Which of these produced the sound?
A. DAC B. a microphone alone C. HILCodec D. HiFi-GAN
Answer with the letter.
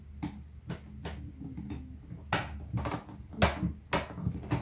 B